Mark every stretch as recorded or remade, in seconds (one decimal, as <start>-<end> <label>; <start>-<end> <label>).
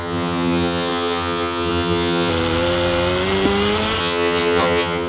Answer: 0.0-2.3 remade; 2.3-4.0 recorded; 4.0-5.1 remade